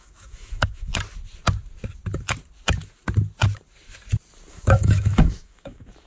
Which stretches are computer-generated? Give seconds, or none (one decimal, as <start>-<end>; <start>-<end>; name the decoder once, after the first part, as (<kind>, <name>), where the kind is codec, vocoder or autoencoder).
0.0-0.9 (autoencoder, DAC-VAE); 4.5-6.1